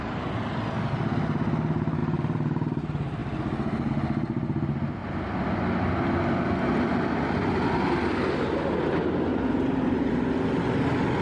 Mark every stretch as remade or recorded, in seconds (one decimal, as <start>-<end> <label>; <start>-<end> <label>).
0.0-9.3 recorded; 9.3-10.1 remade; 10.1-11.2 recorded

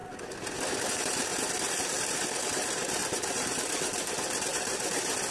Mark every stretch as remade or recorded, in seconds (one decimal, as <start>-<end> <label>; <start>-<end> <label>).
0.0-0.9 recorded; 0.9-1.3 remade; 1.3-1.8 recorded; 1.8-5.3 remade

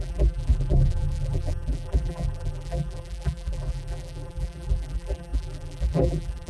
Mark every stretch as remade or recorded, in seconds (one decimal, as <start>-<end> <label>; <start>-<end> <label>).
0.0-6.5 remade

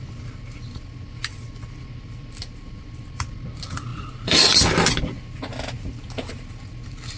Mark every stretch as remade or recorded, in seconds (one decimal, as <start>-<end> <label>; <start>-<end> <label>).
0.0-7.2 recorded

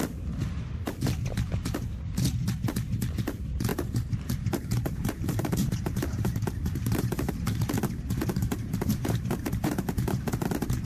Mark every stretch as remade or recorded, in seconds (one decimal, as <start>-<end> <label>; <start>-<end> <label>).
0.0-3.7 recorded; 3.7-7.6 remade; 7.6-8.4 recorded; 8.4-10.2 remade; 10.2-10.8 recorded

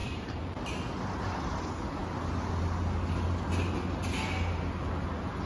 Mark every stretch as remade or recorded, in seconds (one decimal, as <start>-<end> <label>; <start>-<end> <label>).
0.0-0.6 remade; 0.6-5.5 recorded